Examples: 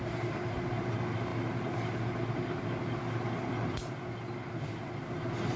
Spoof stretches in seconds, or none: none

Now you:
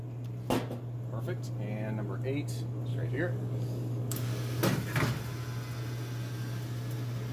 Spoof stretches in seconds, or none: 2.9-4.6 (codec, DAC)

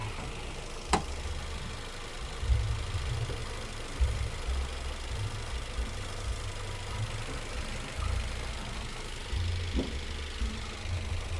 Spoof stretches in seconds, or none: none

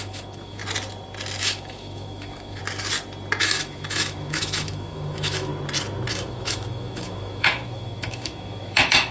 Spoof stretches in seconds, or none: 0.0-0.6 (autoencoder, DAC-VAE); 1.4-2.6; 3.4-5.5; 6.1-9.1